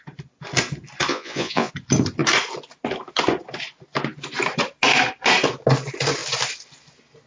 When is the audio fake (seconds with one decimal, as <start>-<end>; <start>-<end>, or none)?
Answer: 1.1-1.7